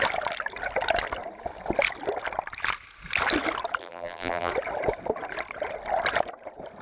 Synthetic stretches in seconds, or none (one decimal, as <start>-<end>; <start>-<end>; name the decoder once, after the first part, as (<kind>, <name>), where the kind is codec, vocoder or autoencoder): 3.8-4.5 (vocoder, BigVGAN v2)